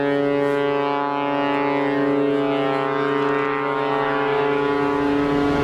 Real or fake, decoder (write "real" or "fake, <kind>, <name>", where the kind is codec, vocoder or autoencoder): real